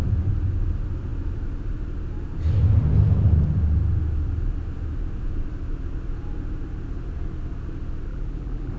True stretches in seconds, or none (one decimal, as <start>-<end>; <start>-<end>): 0.0-8.1